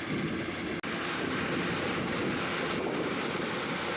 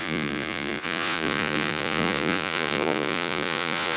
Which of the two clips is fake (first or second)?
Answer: second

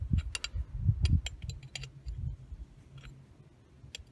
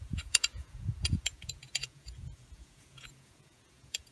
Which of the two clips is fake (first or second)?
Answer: second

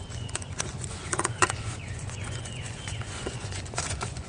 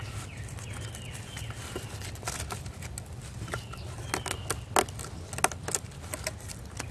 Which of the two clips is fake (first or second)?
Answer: first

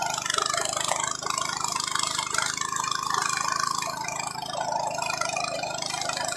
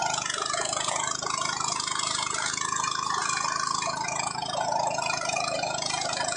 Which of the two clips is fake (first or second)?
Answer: second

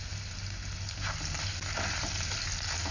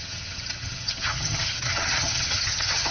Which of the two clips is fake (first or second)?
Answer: second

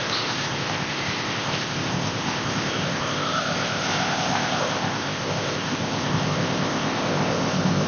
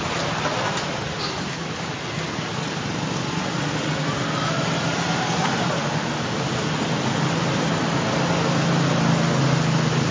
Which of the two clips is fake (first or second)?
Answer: first